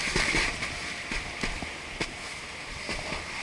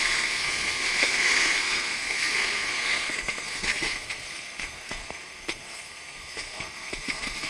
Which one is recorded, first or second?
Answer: first